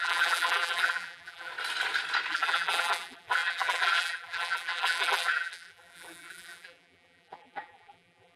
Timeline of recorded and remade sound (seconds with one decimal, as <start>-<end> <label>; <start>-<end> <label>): 0.0-1.5 remade; 1.5-2.3 recorded; 2.3-8.4 remade